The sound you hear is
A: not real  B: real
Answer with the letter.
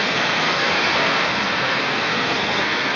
A